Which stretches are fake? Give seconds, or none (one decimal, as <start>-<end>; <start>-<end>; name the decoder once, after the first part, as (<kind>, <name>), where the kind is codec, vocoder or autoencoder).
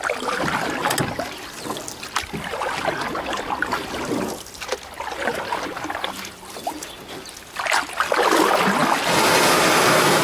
none